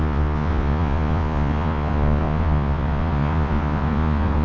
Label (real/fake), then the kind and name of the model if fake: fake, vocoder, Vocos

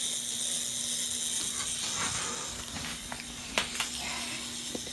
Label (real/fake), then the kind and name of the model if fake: real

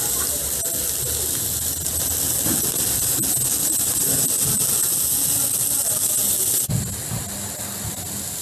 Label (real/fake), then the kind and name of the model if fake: real